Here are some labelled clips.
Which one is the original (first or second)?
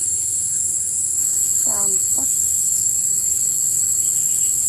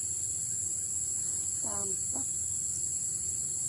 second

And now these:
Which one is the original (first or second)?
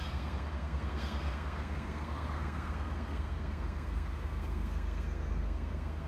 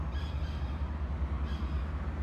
second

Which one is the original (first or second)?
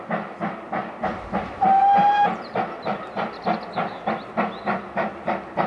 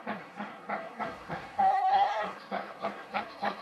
first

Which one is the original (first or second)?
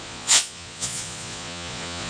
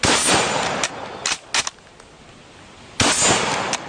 second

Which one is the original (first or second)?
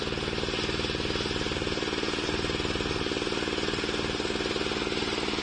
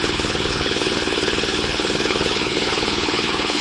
first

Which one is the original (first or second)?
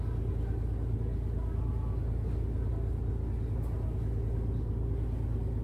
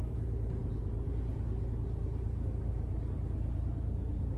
first